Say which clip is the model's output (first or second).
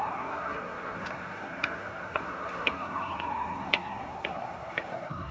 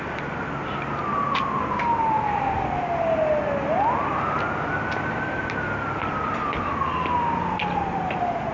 first